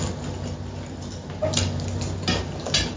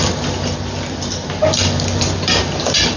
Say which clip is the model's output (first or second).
second